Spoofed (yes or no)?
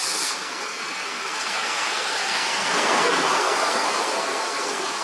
yes